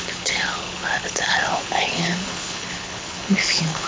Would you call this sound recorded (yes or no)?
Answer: no